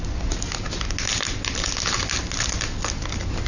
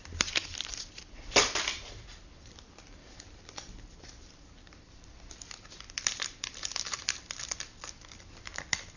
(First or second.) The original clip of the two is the first